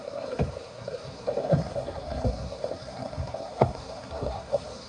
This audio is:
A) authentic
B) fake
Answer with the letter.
B